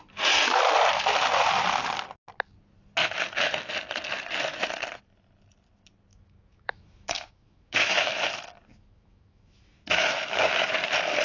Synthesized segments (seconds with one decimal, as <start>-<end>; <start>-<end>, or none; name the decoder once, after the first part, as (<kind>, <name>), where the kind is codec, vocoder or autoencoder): 3.0-3.7 (autoencoder, DAC-VAE); 6.1-8.1; 8.7-10.7